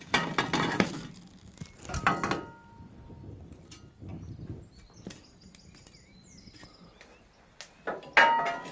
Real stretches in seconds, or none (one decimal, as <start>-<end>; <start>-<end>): 0.0-8.7